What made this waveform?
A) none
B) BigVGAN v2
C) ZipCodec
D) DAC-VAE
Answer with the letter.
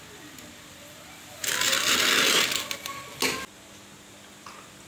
A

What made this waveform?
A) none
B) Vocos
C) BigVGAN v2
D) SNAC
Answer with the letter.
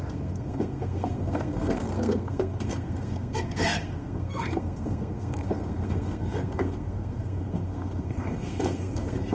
D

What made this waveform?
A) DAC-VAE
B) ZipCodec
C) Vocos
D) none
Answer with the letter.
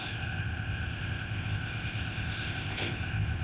B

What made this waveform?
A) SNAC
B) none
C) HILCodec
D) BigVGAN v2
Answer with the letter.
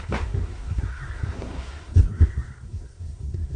A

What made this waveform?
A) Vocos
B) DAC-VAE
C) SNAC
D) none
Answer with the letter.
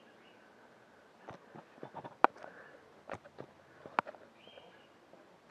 D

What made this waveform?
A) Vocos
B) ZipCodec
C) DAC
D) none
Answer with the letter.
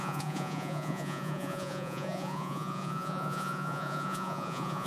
A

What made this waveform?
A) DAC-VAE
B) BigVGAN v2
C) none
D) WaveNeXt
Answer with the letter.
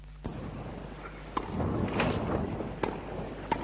C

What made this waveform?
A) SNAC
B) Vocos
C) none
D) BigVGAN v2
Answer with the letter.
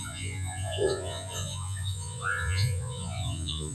B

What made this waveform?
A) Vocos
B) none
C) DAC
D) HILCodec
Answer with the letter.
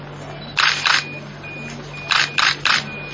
B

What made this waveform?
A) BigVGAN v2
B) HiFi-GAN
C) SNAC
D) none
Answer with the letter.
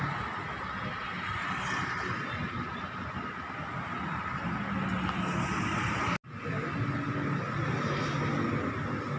D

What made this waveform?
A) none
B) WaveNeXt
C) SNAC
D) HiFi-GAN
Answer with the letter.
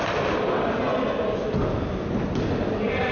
A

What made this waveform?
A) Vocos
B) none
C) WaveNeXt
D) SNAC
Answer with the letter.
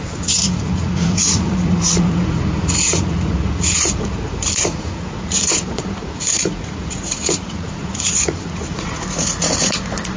A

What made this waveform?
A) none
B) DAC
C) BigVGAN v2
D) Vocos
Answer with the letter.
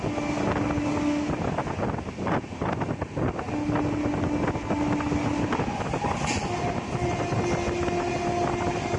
A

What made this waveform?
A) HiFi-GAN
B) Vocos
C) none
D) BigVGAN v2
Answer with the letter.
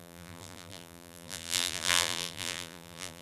D